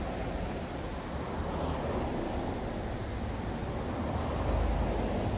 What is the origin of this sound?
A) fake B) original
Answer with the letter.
B